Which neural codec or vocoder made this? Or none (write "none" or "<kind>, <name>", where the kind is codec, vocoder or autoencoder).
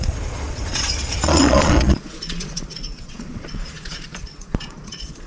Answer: vocoder, Vocos